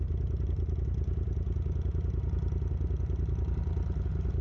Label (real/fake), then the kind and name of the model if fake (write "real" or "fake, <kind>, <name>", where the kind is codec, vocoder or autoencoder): real